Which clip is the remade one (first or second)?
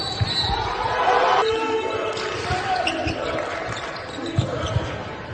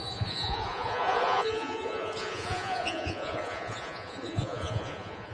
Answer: second